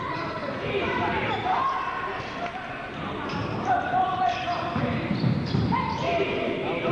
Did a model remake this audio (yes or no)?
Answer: no